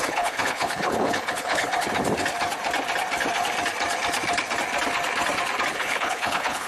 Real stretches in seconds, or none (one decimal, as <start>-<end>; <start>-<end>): 1.7-5.7